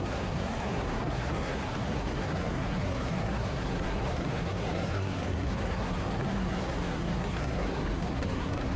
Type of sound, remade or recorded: remade